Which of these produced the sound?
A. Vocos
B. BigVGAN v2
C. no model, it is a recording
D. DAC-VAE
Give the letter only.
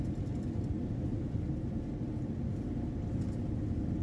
C